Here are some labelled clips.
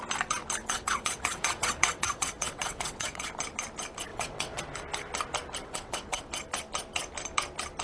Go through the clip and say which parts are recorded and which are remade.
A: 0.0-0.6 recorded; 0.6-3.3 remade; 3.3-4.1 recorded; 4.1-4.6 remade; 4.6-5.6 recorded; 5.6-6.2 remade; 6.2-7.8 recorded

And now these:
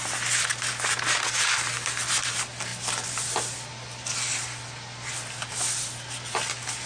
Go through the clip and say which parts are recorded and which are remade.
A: 0.0-6.9 recorded

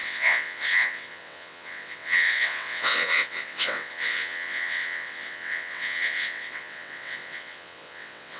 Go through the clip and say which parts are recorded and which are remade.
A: 0.0-8.4 remade